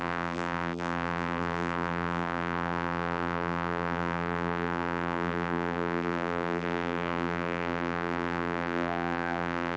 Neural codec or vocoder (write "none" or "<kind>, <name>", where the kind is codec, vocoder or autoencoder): vocoder, BigVGAN v2